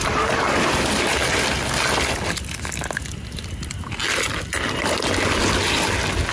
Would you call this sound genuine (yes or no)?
yes